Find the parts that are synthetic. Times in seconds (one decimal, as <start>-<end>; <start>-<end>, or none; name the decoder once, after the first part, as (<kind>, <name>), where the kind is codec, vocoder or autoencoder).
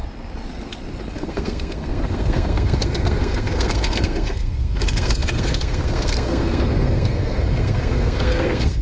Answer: 1.1-8.8 (codec, SNAC)